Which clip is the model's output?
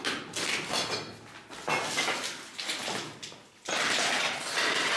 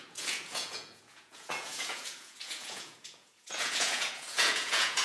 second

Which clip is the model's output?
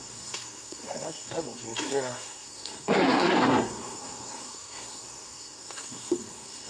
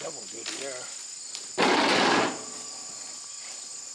first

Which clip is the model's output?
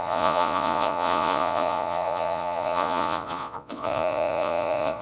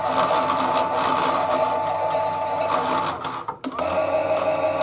first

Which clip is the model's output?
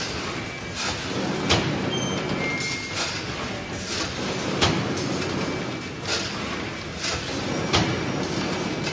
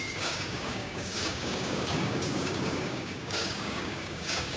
second